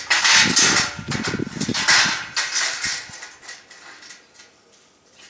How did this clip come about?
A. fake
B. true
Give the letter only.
B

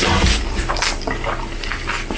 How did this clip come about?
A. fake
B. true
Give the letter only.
B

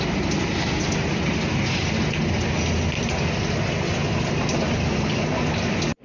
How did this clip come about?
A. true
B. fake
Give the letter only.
A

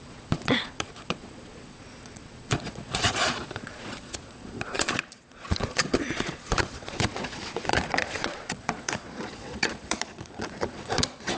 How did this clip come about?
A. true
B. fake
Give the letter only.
B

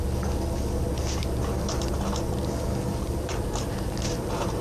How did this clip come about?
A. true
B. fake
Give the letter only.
A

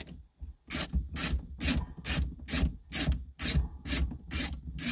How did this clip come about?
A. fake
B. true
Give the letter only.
B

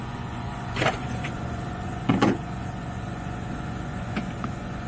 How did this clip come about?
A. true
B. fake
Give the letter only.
B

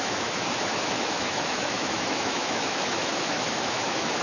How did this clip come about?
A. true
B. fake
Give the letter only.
B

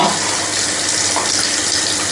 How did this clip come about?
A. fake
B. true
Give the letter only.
B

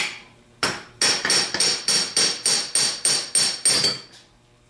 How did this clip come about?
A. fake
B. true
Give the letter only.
B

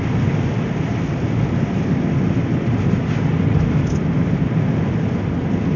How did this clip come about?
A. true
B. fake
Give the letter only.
A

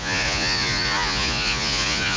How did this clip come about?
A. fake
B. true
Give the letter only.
A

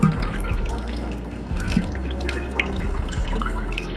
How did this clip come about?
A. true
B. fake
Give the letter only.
B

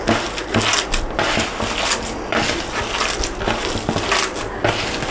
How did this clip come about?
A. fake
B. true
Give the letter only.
B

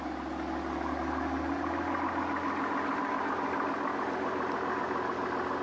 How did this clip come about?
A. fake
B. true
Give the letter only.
B